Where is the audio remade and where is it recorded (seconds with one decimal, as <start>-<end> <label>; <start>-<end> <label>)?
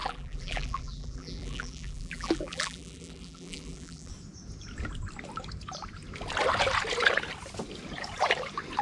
0.0-4.1 remade; 4.1-8.8 recorded